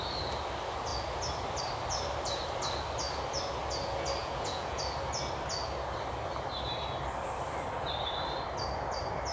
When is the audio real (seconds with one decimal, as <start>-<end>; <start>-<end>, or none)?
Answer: 0.0-4.2; 4.8-9.3